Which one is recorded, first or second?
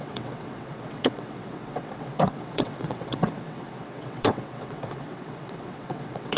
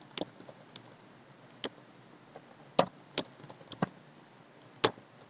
second